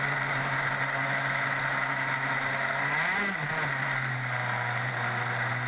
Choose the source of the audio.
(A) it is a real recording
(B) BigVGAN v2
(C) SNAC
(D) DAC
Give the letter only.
A